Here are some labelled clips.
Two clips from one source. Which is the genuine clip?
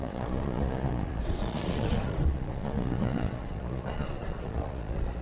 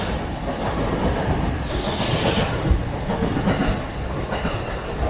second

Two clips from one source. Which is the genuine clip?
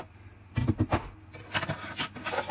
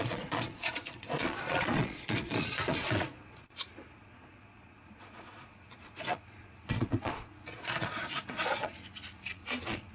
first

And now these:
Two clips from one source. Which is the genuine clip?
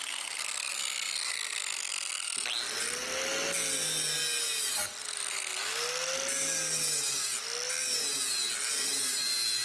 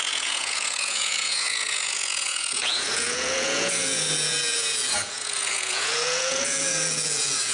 first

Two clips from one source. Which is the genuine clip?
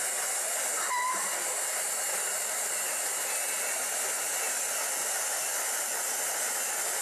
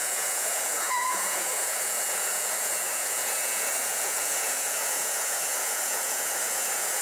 first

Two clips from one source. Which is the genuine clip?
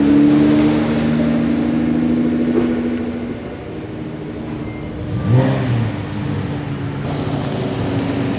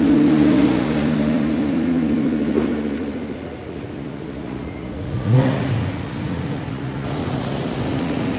first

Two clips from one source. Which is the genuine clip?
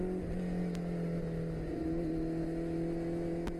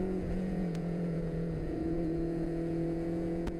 first